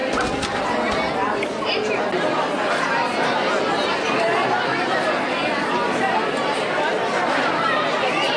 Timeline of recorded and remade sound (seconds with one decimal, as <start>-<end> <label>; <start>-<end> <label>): 0.0-8.4 recorded